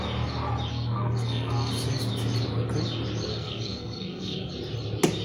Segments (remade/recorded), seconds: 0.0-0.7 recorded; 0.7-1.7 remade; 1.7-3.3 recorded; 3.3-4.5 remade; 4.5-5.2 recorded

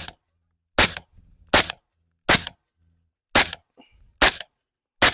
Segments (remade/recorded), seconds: 0.0-5.1 recorded

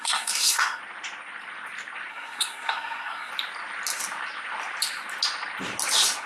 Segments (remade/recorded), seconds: 0.0-0.8 remade; 0.8-2.1 recorded; 2.1-3.3 remade; 3.3-6.3 recorded

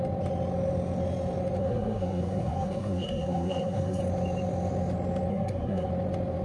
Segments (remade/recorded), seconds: 0.0-1.6 recorded; 1.6-4.0 remade; 4.0-5.3 recorded; 5.3-5.9 remade; 5.9-6.4 recorded